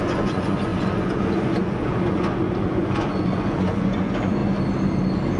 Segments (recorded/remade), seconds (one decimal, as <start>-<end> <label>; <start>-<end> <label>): 0.0-4.4 remade; 4.4-5.4 recorded

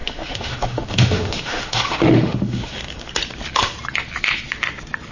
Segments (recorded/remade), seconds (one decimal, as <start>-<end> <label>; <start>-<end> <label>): 0.0-3.1 remade; 3.1-5.1 recorded